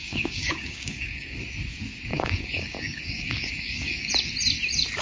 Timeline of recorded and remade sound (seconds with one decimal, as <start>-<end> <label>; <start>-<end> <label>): 0.0-1.4 remade; 1.4-2.1 recorded; 2.1-4.1 remade; 4.1-5.0 recorded